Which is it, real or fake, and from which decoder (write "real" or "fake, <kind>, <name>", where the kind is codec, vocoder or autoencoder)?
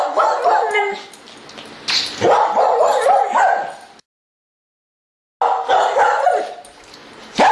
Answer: real